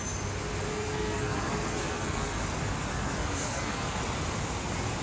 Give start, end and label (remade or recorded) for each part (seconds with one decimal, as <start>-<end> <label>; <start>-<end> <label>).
0.0-0.7 recorded; 0.7-2.4 remade; 2.4-2.9 recorded; 2.9-4.0 remade; 4.0-5.0 recorded